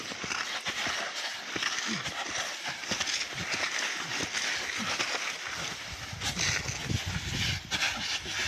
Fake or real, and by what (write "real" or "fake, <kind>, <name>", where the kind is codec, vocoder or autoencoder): real